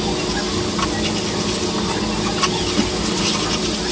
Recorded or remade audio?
recorded